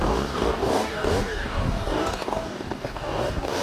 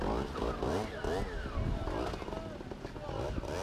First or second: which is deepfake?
first